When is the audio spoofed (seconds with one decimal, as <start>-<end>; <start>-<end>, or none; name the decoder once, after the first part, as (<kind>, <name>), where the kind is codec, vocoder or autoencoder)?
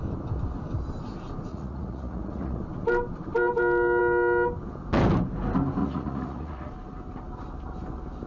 1.5-2.6 (vocoder, Vocos); 5.8-6.7